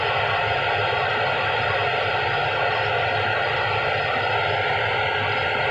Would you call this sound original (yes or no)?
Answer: yes